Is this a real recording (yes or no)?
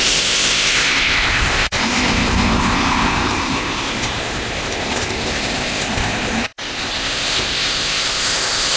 no